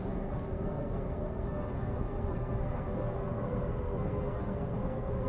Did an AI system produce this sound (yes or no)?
yes